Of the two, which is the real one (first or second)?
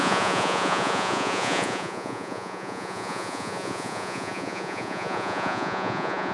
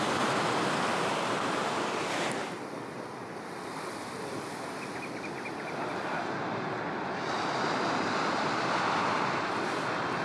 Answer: second